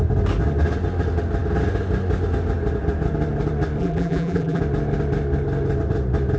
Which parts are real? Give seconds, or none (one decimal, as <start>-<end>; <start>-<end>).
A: 0.0-3.8; 4.6-6.4